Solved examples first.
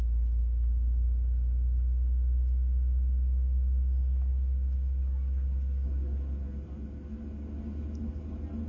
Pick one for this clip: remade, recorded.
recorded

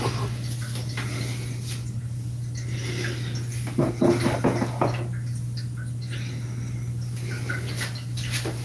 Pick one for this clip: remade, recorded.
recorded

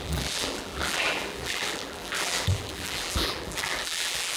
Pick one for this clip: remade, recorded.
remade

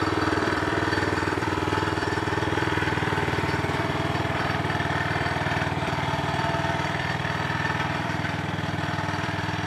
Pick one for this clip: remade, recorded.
remade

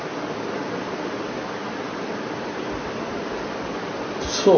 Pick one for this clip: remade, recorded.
recorded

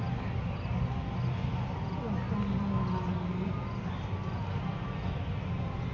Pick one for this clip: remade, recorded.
recorded